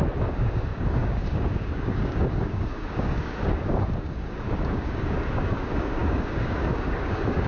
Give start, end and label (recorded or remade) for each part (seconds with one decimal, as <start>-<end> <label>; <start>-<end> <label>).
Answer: 0.0-7.5 remade